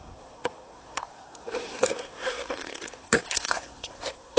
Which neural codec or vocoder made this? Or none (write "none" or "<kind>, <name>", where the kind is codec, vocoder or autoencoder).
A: codec, SNAC